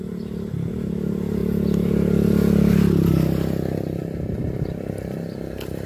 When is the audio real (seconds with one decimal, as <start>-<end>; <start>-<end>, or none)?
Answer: 0.0-5.9